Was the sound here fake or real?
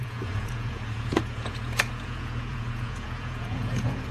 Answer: fake